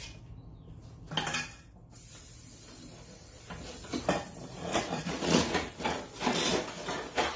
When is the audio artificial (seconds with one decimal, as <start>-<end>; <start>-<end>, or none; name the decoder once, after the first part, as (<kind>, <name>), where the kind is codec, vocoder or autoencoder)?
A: 4.6-6.0 (vocoder, Vocos)